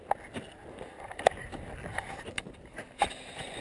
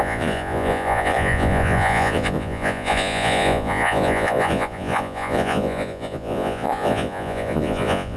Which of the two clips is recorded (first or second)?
first